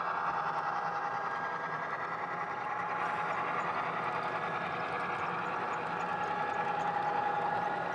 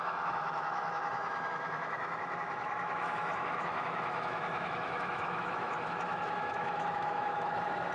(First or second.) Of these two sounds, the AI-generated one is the second